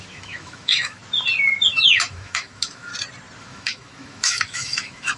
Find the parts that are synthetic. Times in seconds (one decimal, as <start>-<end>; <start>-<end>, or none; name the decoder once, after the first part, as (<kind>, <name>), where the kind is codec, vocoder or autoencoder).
0.0-1.0 (autoencoder, DAC-VAE); 1.7-2.9; 3.4-5.2